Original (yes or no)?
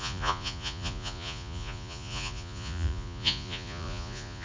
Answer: no